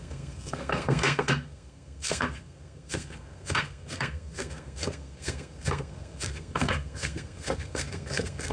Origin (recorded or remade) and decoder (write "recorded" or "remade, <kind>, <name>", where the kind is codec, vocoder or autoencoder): remade, codec, SNAC